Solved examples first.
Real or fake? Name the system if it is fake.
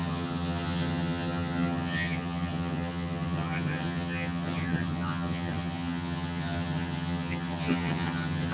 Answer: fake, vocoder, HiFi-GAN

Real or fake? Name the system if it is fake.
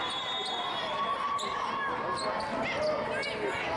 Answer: real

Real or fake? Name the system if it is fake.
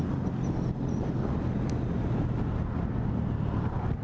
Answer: real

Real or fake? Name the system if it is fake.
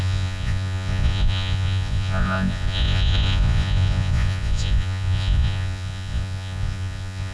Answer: fake, vocoder, Vocos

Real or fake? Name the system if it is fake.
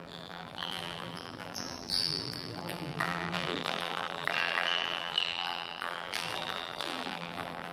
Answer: fake, vocoder, BigVGAN v2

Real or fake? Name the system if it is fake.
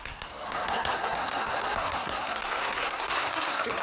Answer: fake, codec, SNAC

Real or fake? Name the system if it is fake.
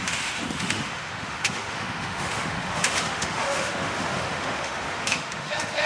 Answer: fake, autoencoder, DAC-VAE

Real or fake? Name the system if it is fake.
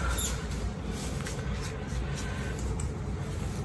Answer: real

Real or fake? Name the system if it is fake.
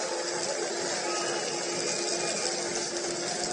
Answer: real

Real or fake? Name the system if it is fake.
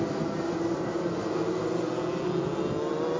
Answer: real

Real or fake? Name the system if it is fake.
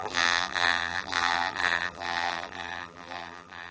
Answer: fake, vocoder, BigVGAN v2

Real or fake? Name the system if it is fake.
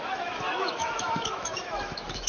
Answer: fake, autoencoder, DAC-VAE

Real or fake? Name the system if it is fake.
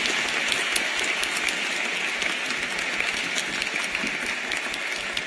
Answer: real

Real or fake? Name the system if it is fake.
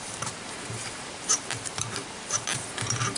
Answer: fake, vocoder, BigVGAN v2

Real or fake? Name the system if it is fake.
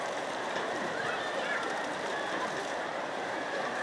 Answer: fake, vocoder, BigVGAN v2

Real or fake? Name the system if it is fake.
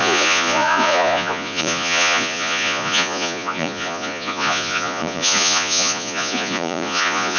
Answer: fake, vocoder, Vocos